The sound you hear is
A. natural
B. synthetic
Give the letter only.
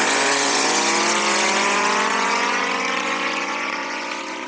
B